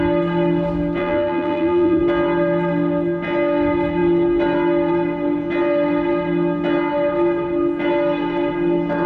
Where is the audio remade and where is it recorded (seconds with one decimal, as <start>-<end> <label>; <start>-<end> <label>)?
0.0-1.0 recorded; 1.0-2.0 remade; 2.0-9.1 recorded